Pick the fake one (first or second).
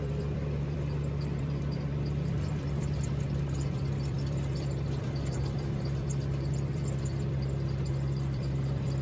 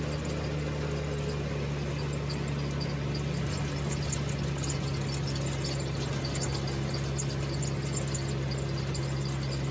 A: first